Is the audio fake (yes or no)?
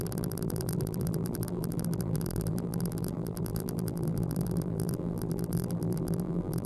yes